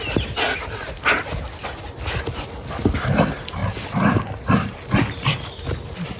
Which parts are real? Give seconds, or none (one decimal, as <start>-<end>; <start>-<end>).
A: 0.0-6.2